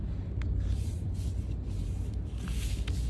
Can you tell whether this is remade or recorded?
remade